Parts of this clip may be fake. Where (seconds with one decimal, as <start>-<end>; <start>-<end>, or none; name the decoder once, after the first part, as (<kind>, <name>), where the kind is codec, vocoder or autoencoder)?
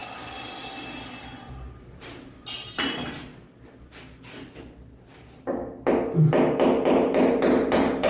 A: 1.2-3.3 (vocoder, BigVGAN v2); 6.7-8.1